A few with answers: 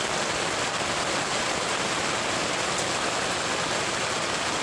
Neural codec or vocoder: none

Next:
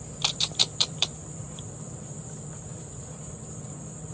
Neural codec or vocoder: vocoder, BigVGAN v2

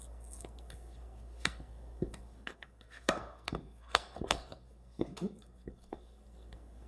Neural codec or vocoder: codec, SNAC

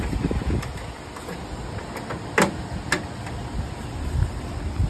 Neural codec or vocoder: none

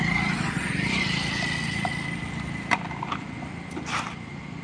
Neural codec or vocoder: none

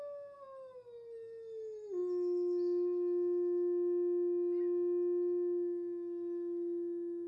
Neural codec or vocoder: none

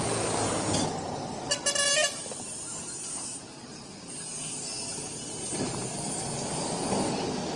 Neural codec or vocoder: none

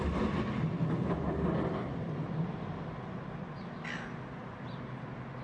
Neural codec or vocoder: none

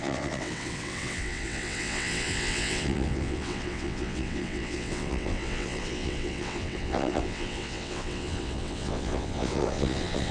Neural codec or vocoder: vocoder, WaveNeXt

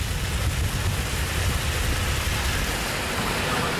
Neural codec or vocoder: none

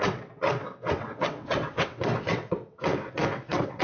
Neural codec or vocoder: vocoder, WaveNeXt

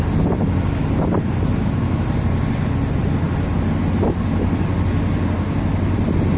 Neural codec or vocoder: none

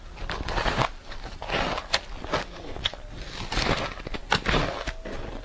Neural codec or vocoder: none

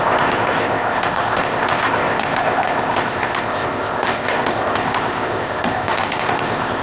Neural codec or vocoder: codec, ZipCodec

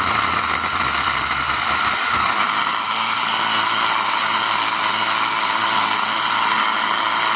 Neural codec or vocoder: none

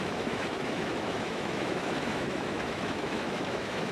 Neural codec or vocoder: autoencoder, DAC-VAE